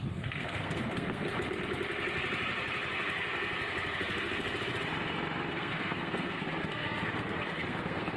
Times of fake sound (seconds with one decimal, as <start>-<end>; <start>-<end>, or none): 0.0-1.3; 2.9-4.5; 5.5-8.2